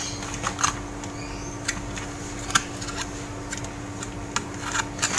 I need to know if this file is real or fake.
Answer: real